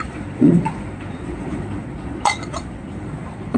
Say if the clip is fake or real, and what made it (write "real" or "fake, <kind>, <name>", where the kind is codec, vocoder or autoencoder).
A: fake, vocoder, Vocos